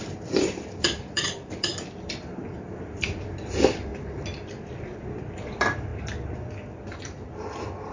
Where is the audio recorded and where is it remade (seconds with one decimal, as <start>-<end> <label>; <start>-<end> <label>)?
0.0-1.7 remade; 1.7-2.7 recorded; 2.7-3.9 remade; 3.9-5.2 recorded; 5.2-5.9 remade; 5.9-7.9 recorded